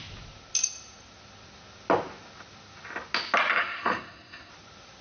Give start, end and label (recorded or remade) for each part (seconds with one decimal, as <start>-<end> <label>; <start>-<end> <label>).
0.0-3.5 recorded; 3.5-4.5 remade; 4.5-5.0 recorded